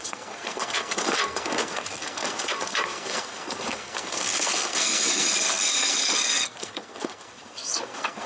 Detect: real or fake fake